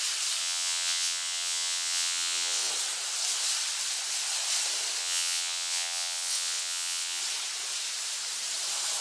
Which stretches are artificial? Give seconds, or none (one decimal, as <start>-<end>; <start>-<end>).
0.4-2.7; 5.0-7.2